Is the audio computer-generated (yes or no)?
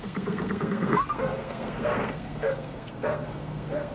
yes